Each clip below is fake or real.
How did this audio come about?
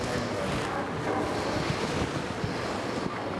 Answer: real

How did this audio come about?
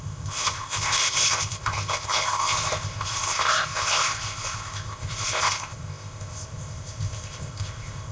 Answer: fake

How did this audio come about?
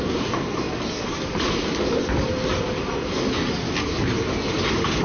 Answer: real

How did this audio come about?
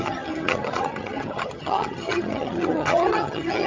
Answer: fake